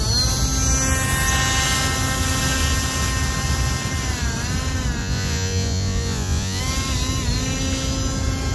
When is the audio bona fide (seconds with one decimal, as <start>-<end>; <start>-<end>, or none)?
0.0-5.0; 6.6-8.5

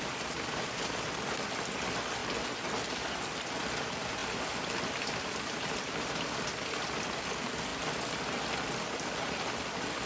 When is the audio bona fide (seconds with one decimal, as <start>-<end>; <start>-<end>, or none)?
0.0-10.1

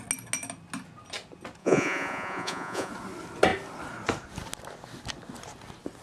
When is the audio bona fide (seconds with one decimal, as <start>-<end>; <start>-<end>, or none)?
0.0-1.6; 2.9-6.0

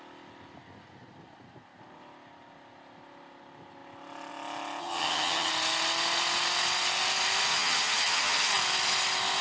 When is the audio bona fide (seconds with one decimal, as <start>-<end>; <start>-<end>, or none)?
0.0-4.8; 5.5-7.5; 8.5-9.4

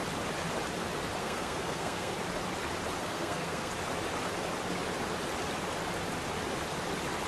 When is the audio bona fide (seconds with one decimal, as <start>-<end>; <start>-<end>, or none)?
0.0-1.2; 2.1-3.0; 3.7-7.3

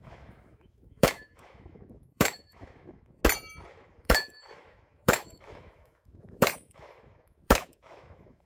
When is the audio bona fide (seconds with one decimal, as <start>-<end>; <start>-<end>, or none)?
3.2-3.7